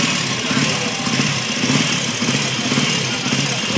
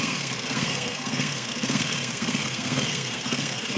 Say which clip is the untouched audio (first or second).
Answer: first